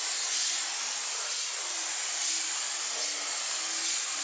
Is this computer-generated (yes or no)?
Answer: no